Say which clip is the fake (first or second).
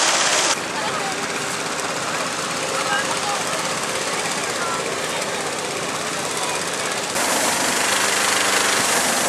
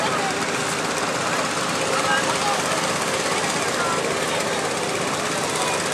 first